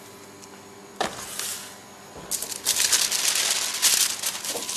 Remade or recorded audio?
recorded